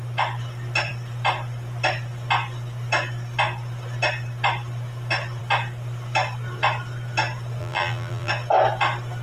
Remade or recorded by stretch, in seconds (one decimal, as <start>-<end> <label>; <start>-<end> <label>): 0.0-7.6 recorded; 7.6-8.3 remade; 8.3-9.2 recorded